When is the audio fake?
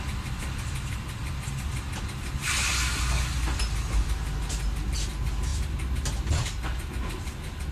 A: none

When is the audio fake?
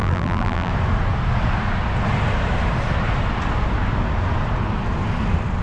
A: 0.0-0.7 (vocoder, BigVGAN v2)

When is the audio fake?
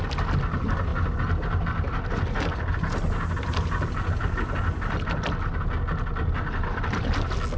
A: none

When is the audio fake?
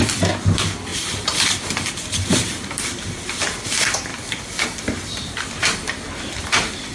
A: 0.0-6.9 (vocoder, BigVGAN v2)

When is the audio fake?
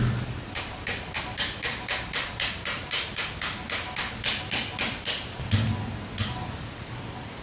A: 2.3-3.3 (vocoder, BigVGAN v2)